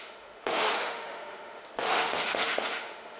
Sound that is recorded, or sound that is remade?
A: remade